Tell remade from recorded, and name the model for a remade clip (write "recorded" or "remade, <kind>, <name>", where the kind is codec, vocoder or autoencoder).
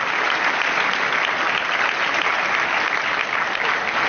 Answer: recorded